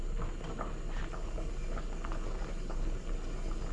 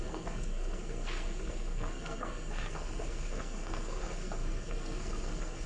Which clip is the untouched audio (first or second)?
first